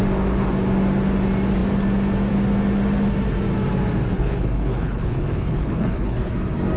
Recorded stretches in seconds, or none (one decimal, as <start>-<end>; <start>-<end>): 0.0-4.1; 6.3-6.8